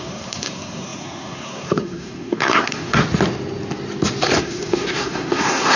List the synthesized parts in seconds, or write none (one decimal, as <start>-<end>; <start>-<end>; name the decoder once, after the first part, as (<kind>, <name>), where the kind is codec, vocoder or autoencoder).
0.0-3.0 (codec, SNAC); 4.4-5.8